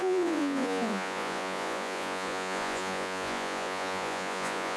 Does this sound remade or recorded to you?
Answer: remade